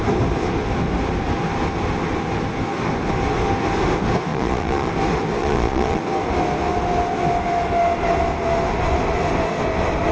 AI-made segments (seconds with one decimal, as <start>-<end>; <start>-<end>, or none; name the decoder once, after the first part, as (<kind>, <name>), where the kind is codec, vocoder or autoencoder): 4.3-4.9 (vocoder, Vocos); 5.4-6.0